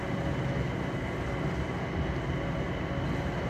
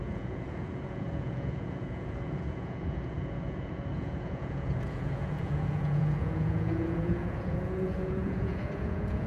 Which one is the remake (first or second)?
second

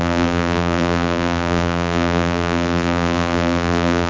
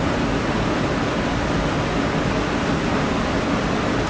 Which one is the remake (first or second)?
first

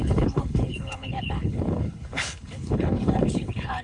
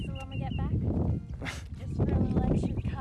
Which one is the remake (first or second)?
first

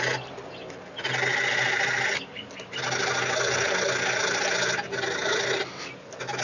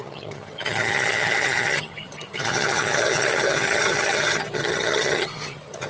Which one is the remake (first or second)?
second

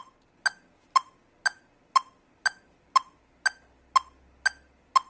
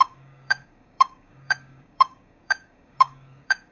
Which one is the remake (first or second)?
second